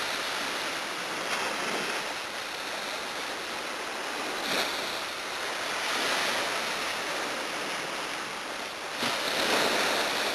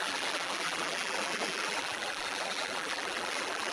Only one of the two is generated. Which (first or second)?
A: second